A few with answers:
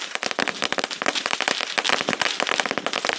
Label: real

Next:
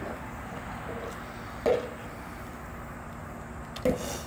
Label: real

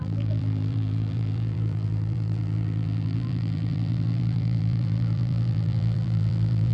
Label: fake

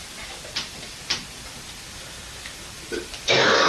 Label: fake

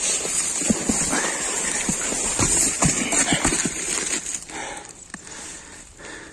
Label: real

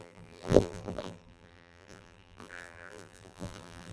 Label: fake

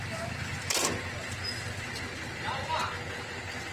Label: real